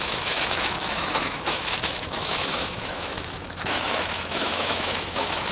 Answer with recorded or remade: remade